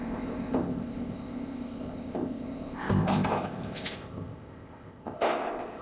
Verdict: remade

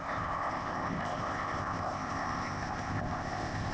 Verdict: remade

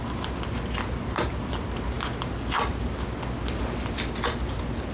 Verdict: recorded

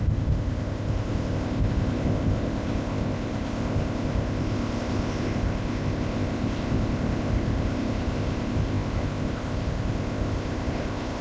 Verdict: remade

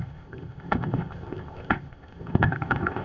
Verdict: remade